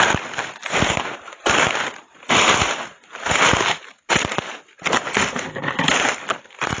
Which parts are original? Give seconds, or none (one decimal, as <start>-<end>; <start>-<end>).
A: 0.0-0.7; 4.8-6.8